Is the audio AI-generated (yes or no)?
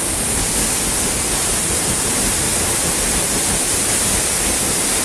no